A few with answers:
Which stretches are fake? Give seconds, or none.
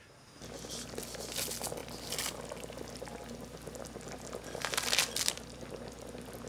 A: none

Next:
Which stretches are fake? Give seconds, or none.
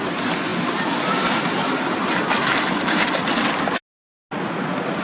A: none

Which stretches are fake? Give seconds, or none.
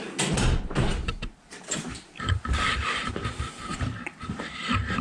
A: 0.9-3.1 (vocoder, BigVGAN v2); 3.7-4.4